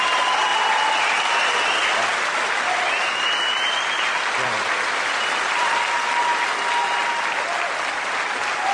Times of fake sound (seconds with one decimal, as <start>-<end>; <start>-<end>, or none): 0.5-5.5